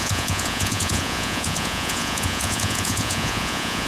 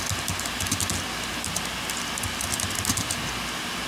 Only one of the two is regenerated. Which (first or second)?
first